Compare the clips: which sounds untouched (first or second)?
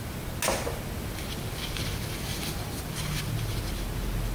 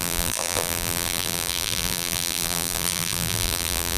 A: first